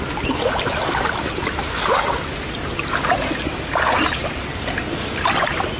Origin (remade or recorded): recorded